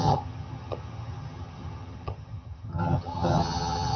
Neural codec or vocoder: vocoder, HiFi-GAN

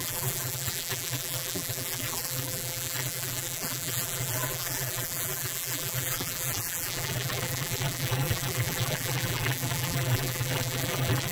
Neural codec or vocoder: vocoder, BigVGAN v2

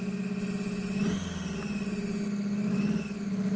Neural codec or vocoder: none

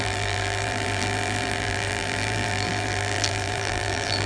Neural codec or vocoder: vocoder, BigVGAN v2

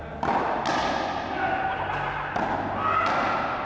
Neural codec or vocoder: none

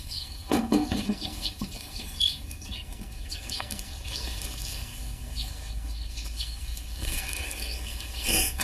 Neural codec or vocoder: codec, SNAC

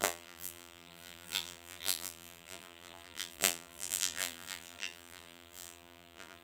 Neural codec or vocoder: vocoder, BigVGAN v2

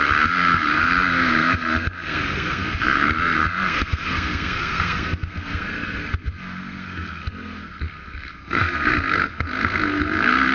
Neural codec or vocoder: codec, SNAC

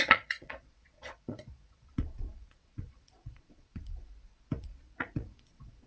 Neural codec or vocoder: vocoder, Vocos